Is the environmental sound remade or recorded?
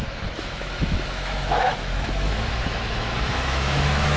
remade